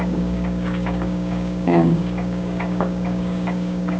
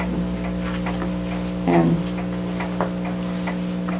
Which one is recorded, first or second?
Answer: second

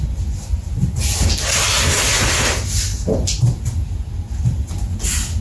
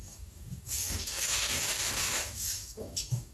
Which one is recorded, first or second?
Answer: first